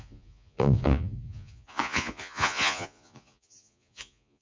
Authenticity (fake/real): fake